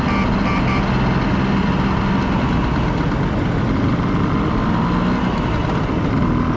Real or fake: real